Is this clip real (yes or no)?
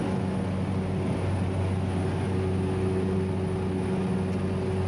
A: yes